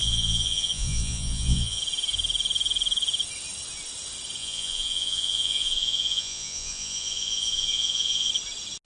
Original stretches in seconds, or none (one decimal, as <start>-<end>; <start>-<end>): 1.8-4.4; 8.3-8.8